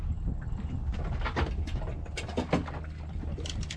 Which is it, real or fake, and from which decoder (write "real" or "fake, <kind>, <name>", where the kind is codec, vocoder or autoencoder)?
real